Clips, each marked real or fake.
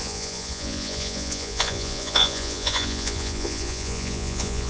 fake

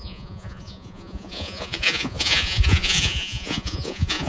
fake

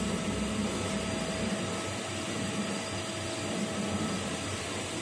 real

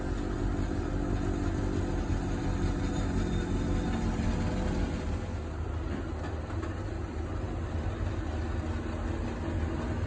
real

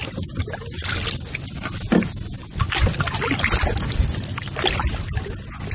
real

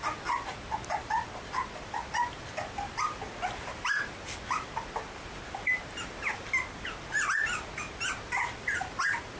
real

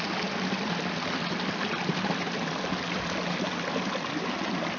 real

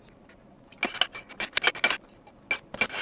real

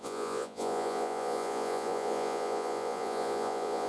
fake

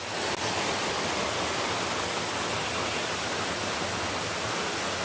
real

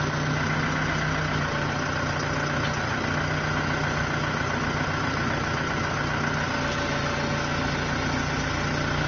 real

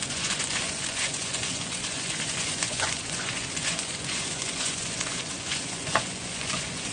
fake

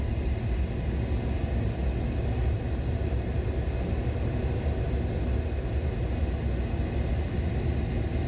real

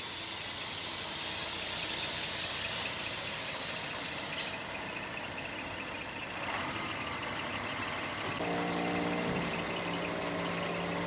real